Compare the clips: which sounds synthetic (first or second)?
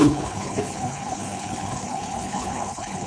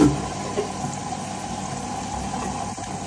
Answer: first